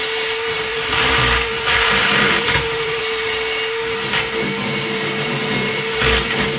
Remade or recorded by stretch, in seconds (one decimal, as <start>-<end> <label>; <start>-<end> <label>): 0.0-0.7 recorded; 0.7-3.0 remade; 3.0-6.6 recorded